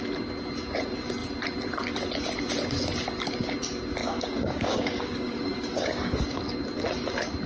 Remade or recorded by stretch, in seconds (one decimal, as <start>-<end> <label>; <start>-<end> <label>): 0.0-4.0 recorded; 4.0-6.4 remade; 6.4-7.5 recorded

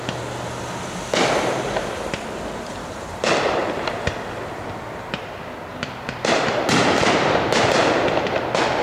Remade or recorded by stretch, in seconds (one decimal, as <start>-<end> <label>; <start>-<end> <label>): 0.0-5.7 recorded; 5.7-6.6 remade; 6.6-8.8 recorded

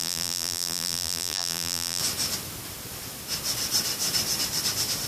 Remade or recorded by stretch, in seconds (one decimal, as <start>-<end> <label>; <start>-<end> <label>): 0.0-2.0 remade; 2.0-5.1 recorded

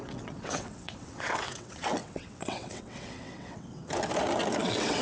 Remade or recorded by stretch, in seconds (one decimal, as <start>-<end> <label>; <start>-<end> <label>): 0.0-3.8 remade; 3.8-4.6 recorded; 4.6-5.0 remade

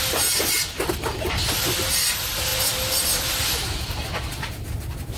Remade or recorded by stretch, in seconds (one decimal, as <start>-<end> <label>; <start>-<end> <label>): 0.0-5.2 recorded

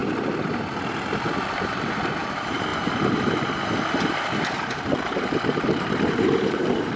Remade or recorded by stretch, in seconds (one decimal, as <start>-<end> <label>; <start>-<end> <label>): 0.0-2.2 recorded; 2.2-7.0 remade